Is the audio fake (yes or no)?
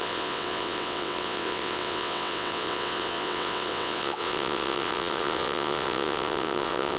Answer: yes